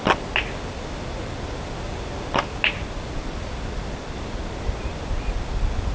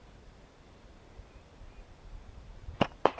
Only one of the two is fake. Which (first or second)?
second